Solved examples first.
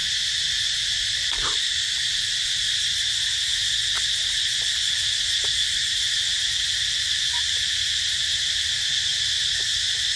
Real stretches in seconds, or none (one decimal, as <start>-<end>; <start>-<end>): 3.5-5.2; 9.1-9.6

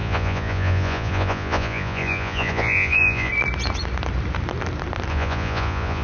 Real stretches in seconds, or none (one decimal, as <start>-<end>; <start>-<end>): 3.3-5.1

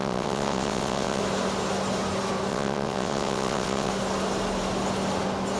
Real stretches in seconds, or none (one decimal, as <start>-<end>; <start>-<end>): 1.2-2.5; 3.9-5.6